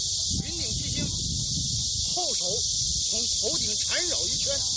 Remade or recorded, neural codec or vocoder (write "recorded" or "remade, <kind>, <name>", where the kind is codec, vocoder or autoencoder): recorded